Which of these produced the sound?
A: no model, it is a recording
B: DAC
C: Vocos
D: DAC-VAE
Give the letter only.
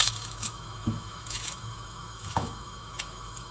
D